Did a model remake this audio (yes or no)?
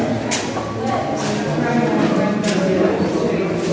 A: no